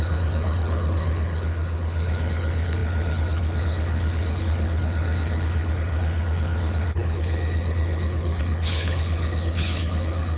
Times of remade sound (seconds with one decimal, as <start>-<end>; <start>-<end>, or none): 0.0-10.4